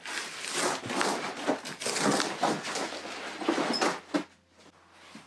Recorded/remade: recorded